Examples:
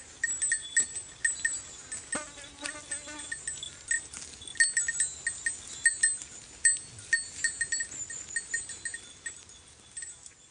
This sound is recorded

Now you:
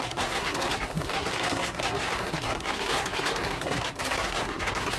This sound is remade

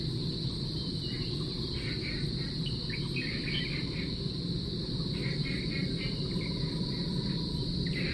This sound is recorded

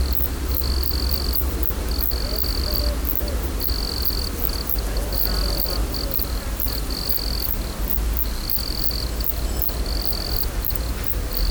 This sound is recorded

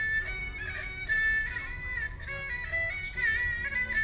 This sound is recorded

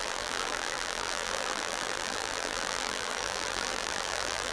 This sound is remade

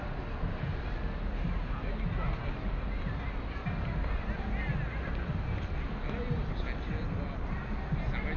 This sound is recorded